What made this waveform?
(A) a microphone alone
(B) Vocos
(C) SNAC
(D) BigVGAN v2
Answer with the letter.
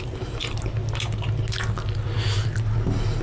A